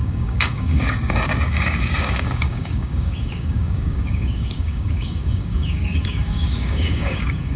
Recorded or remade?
remade